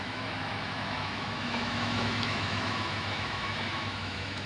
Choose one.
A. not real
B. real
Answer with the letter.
A